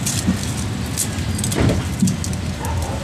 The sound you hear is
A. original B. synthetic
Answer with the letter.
A